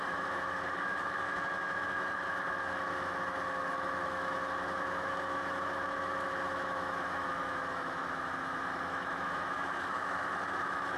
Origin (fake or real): fake